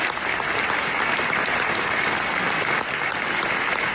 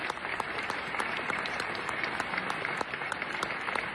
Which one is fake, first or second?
second